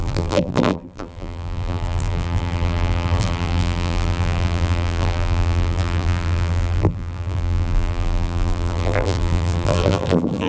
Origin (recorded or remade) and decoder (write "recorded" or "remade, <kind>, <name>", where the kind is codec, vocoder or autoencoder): remade, vocoder, BigVGAN v2